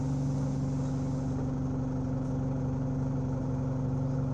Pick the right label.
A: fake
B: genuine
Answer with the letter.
B